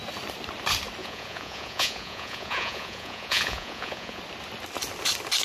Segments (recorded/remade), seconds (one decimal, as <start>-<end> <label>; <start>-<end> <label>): 0.0-1.0 recorded; 1.0-4.2 remade; 4.2-5.4 recorded